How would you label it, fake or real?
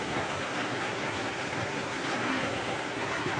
fake